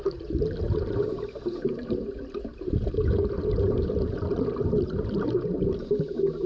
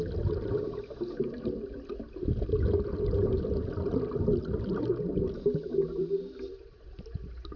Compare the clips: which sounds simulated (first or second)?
first